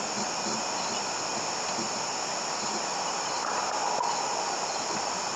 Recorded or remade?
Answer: recorded